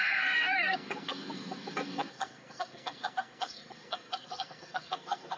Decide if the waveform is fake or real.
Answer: fake